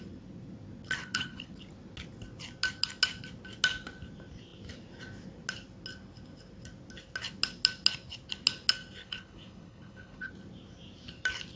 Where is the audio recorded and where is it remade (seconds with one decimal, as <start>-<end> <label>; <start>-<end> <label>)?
0.0-1.0 recorded; 1.0-1.5 remade; 1.5-9.0 recorded; 9.0-10.3 remade; 10.3-11.6 recorded